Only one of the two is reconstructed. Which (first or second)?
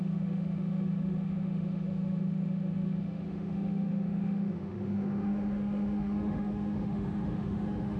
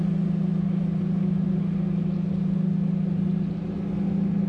first